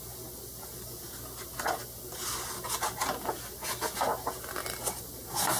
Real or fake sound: real